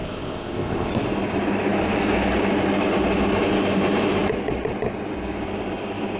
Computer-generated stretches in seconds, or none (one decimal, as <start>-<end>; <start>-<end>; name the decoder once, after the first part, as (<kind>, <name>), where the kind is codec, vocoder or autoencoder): 0.0-0.9 (codec, ZipCodec)